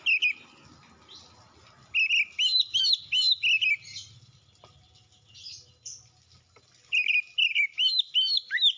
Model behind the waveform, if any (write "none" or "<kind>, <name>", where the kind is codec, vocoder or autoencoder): none